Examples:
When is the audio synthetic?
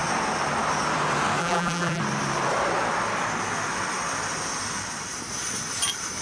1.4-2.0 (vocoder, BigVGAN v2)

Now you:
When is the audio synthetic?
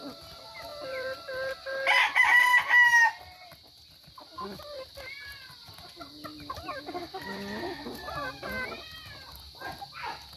0.7-2.4 (vocoder, BigVGAN v2)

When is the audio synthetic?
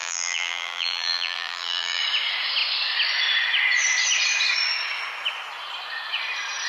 0.0-2.0 (vocoder, BigVGAN v2)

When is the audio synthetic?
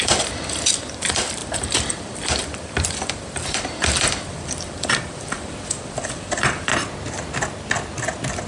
0.0-6.7 (vocoder, BigVGAN v2)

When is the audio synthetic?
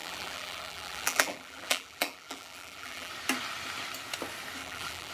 0.0-3.1 (vocoder, BigVGAN v2); 4.6-5.1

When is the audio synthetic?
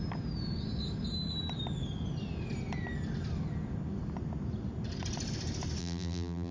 5.8-6.5 (vocoder, BigVGAN v2)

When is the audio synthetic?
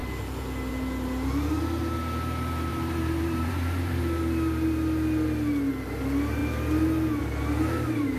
2.7-4.0 (vocoder, BigVGAN v2)